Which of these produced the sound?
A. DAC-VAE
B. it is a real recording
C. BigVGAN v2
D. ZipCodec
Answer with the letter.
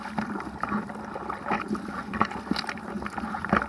B